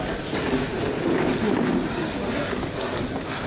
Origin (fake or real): real